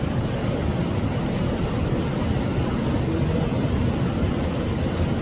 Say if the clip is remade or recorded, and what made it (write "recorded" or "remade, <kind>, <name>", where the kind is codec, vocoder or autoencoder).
recorded